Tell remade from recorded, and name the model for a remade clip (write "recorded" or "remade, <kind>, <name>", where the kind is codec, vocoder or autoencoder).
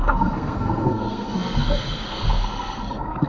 remade, codec, SNAC